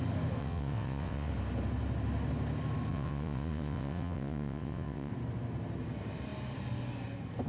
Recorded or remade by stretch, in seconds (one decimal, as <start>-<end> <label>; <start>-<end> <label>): 0.0-0.4 recorded; 0.4-1.3 remade; 1.3-2.9 recorded; 2.9-5.1 remade; 5.1-7.5 recorded